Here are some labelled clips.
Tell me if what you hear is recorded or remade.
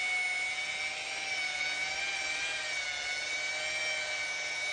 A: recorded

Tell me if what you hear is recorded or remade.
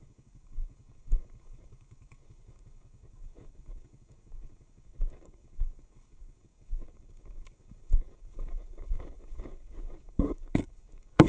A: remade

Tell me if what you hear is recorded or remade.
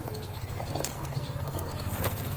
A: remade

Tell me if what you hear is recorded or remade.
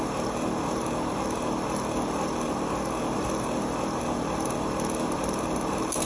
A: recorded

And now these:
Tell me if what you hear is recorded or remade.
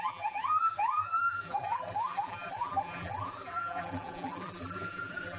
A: remade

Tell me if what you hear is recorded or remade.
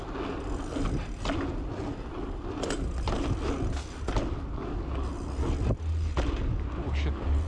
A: recorded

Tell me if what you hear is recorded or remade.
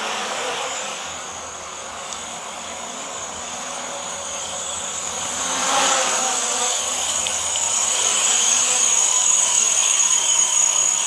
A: remade